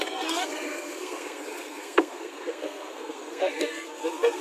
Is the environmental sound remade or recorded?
remade